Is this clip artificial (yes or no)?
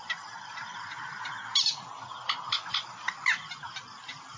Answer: no